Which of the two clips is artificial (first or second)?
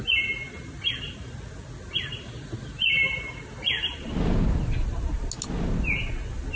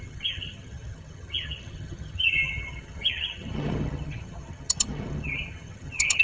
second